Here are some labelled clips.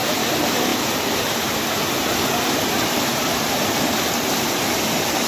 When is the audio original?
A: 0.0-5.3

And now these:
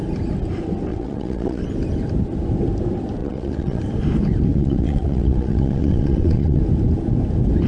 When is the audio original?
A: 0.0-0.9; 1.6-3.2; 3.8-4.5; 6.6-7.7